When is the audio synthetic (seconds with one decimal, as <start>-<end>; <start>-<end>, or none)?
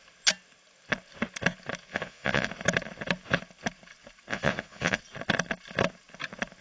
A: 1.9-2.5; 4.3-5.0